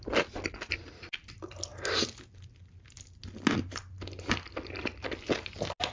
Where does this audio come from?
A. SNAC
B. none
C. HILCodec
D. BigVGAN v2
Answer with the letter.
B